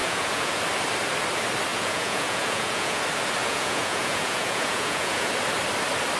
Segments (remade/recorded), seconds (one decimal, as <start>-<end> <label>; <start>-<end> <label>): 0.0-0.6 remade; 0.6-1.7 recorded; 1.7-3.0 remade; 3.0-3.4 recorded; 3.4-5.3 remade; 5.3-6.2 recorded